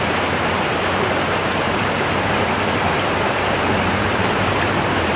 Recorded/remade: remade